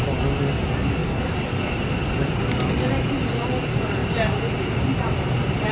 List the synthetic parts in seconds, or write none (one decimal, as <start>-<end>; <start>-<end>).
1.0-1.9; 4.0-4.8